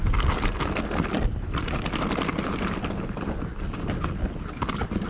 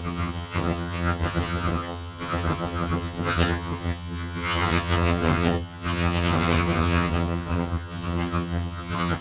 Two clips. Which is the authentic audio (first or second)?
first